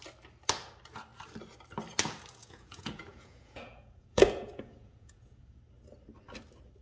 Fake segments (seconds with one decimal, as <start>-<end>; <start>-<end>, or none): 2.4-5.6